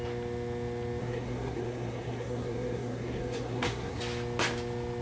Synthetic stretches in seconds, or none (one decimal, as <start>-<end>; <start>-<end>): 1.0-4.0